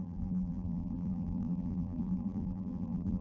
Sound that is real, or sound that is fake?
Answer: fake